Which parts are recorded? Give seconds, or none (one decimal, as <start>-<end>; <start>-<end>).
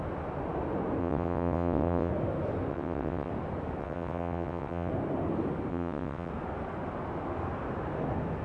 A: 0.0-1.0; 2.1-2.7; 3.3-3.8; 4.9-5.7; 6.3-8.4